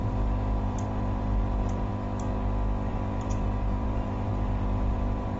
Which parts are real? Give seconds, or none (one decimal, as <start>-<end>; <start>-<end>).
1.9-2.9